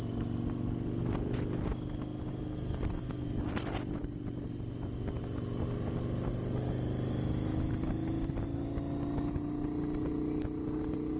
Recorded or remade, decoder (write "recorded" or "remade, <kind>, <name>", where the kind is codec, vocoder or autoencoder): recorded